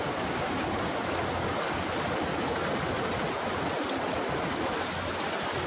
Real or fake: real